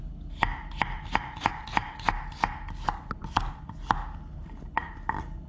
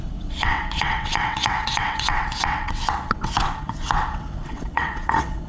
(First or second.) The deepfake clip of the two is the second